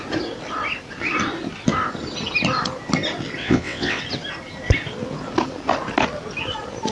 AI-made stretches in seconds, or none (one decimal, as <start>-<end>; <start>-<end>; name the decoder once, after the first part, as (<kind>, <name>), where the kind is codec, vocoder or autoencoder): 3.4-4.0 (vocoder, WaveNeXt)